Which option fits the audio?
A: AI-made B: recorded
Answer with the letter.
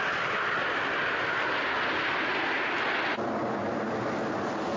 B